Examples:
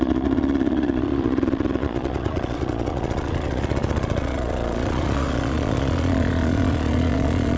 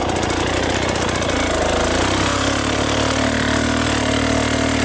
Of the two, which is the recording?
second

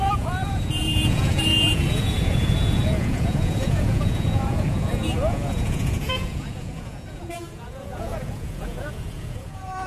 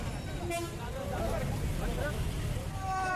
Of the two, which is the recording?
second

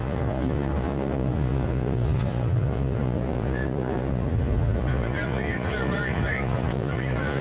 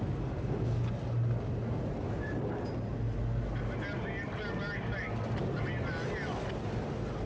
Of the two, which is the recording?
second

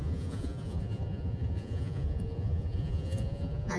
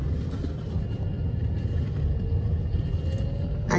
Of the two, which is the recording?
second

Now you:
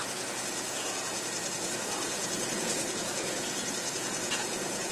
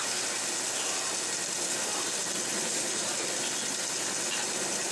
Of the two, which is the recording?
second